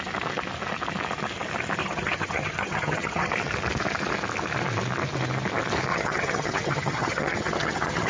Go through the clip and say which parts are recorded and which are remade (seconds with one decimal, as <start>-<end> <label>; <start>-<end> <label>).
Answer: 0.0-1.8 recorded; 1.8-3.3 remade; 3.3-5.9 recorded; 5.9-8.1 remade